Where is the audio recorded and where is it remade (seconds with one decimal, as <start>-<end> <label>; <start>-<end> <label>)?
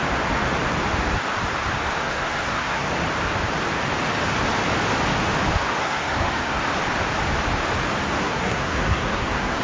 0.0-2.0 recorded; 2.0-2.9 remade; 2.9-5.8 recorded; 5.8-6.6 remade; 6.6-8.2 recorded; 8.2-9.6 remade